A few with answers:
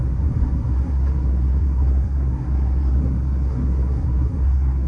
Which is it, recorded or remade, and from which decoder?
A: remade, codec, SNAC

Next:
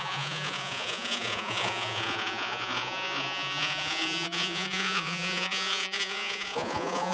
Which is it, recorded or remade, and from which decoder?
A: remade, vocoder, Vocos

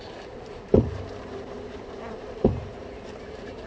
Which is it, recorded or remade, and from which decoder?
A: remade, vocoder, BigVGAN v2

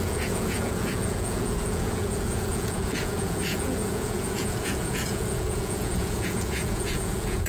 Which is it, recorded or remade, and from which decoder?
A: remade, vocoder, Vocos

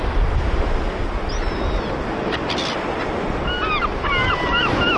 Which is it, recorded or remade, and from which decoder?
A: recorded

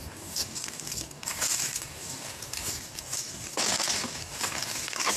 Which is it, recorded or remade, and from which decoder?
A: remade, codec, DAC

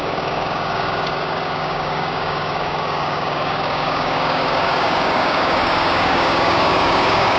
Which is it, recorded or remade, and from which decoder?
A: remade, codec, DAC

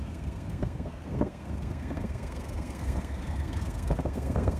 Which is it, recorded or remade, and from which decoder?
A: remade, codec, SNAC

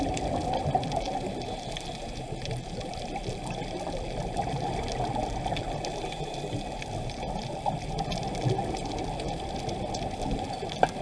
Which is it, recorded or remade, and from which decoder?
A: recorded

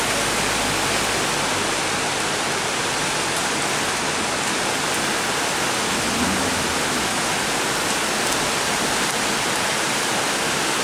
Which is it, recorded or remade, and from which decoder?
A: recorded